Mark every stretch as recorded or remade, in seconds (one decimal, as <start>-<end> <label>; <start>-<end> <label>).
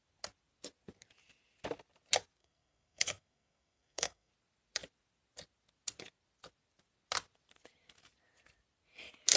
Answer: 0.0-2.4 recorded; 2.4-4.3 remade; 4.3-9.4 recorded